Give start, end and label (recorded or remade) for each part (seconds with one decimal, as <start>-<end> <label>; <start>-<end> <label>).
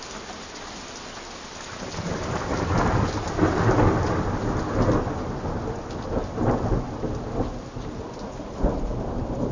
0.0-9.5 recorded